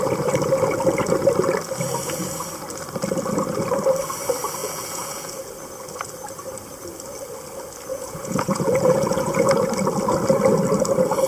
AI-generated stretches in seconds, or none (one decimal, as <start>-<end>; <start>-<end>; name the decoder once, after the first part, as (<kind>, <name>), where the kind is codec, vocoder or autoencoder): 4.6-5.5 (vocoder, Vocos); 7.9-9.5